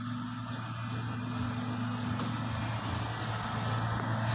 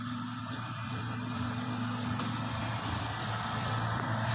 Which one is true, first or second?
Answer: first